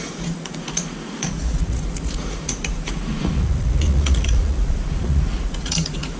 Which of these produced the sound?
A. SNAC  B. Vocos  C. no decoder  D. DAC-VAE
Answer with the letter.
B